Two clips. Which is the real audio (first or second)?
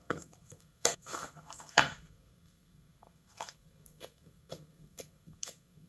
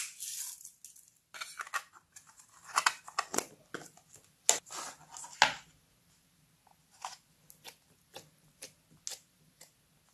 second